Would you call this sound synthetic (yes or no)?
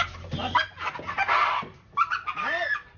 yes